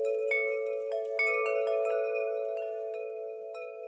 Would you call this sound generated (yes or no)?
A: no